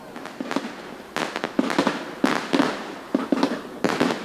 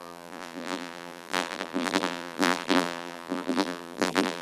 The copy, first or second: second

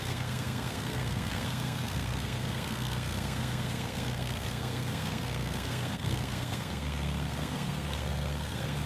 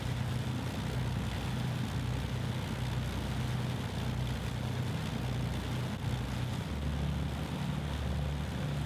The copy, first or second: first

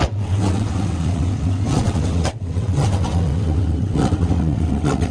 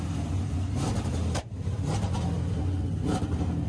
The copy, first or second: first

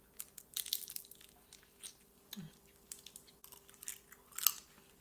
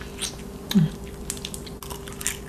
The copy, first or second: first